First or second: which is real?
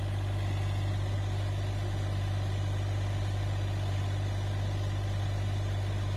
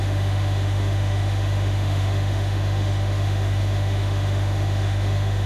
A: first